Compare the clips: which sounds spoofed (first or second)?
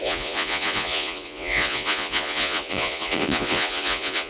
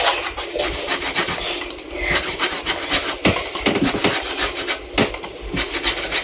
first